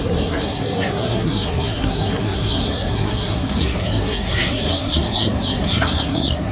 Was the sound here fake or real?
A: fake